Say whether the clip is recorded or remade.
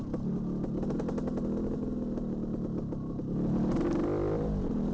recorded